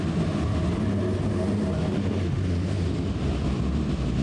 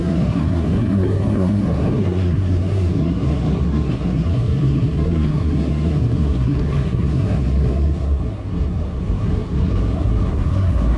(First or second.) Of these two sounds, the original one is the first